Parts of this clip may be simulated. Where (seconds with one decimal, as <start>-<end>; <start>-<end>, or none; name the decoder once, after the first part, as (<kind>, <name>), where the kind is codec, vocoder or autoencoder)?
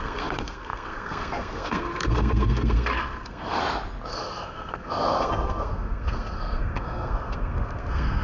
0.0-3.6 (codec, SNAC); 4.1-8.2